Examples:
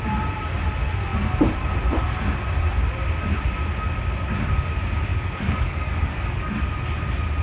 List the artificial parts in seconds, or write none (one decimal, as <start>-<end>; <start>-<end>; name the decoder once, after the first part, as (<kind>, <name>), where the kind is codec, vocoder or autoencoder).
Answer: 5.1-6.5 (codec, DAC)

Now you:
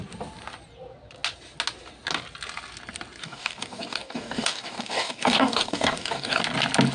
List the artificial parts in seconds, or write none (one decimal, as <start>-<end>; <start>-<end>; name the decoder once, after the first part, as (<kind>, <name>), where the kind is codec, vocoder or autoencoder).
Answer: 3.2-6.4 (codec, DAC)

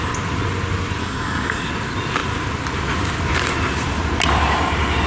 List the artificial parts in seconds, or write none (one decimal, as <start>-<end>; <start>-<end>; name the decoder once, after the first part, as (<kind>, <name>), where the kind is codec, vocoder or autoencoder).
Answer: 1.0-1.7 (codec, DAC)